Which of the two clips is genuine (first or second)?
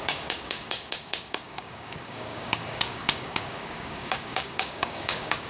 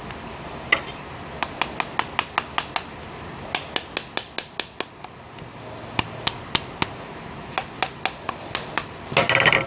second